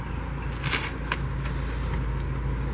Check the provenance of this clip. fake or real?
real